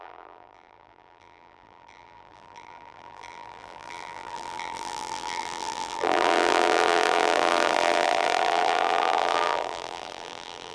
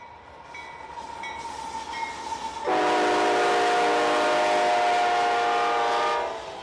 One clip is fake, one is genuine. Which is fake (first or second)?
first